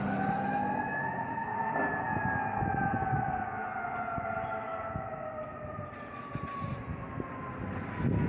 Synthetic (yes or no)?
no